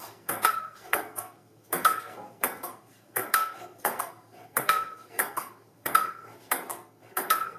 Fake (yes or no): yes